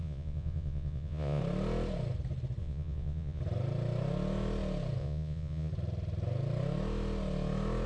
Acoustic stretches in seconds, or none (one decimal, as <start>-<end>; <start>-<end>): 1.4-2.6; 3.4-5.0; 5.7-7.9